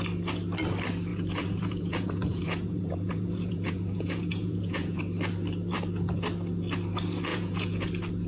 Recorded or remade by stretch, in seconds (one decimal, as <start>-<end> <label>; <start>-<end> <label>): 0.0-1.1 recorded; 1.1-5.0 remade; 5.0-7.3 recorded; 7.3-7.9 remade; 7.9-8.3 recorded